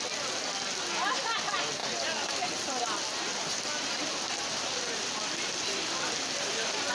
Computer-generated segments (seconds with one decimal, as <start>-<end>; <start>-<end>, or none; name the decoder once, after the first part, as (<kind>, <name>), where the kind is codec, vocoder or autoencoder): none